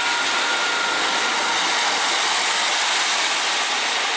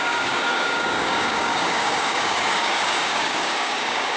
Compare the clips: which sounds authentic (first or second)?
first